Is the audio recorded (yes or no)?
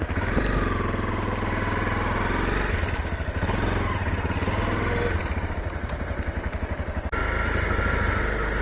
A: yes